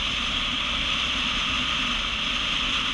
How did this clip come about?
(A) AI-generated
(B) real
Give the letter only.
B